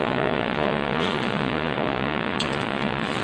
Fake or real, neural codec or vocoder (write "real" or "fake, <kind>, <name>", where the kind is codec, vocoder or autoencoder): fake, vocoder, Vocos